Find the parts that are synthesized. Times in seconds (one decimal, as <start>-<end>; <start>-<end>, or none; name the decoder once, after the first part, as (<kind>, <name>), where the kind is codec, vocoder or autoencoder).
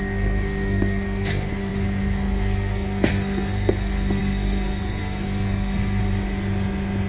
0.0-6.0 (codec, SNAC)